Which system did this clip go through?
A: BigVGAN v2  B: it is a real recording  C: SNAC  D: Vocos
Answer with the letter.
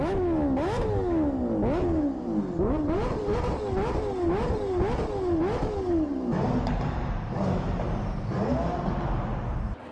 B